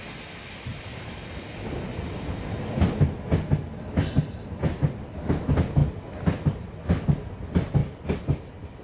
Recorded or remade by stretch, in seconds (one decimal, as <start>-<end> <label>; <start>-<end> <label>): 0.0-8.8 recorded